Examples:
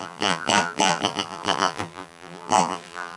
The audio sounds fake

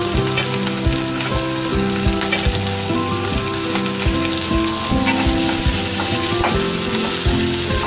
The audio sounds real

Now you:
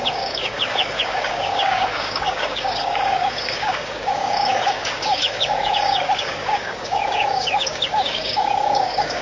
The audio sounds fake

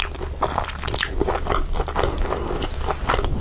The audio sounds real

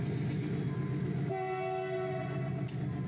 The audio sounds real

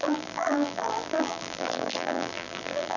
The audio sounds fake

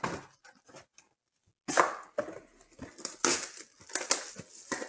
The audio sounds real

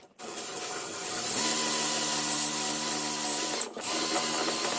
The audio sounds real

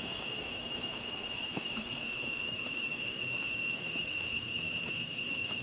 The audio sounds fake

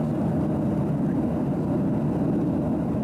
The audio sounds real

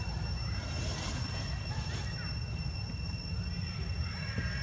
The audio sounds real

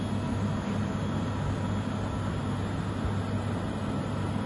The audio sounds real